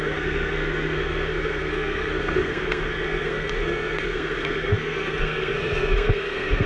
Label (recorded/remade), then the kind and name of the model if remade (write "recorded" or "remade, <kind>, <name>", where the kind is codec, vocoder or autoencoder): remade, codec, SNAC